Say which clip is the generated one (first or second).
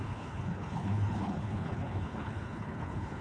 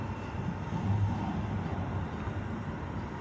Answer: first